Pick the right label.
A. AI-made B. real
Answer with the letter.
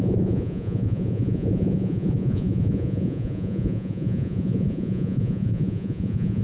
A